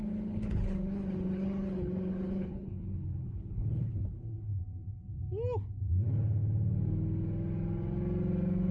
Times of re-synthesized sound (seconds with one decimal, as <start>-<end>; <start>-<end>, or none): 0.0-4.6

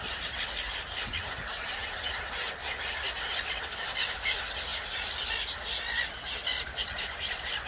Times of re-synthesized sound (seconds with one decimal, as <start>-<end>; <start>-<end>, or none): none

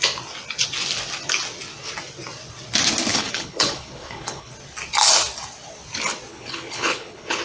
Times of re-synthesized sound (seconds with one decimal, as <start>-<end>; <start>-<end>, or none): 3.1-4.5; 6.3-7.4

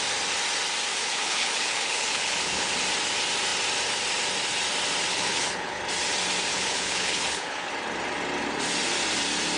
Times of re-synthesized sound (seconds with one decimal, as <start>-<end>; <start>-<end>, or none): 0.9-2.7; 5.1-5.8; 6.5-7.7